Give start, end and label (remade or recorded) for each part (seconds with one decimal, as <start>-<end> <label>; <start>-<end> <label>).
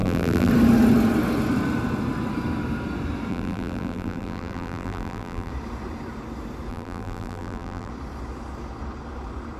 0.0-0.5 remade; 0.5-3.3 recorded; 3.3-5.5 remade; 5.5-6.7 recorded; 6.7-7.9 remade; 7.9-9.6 recorded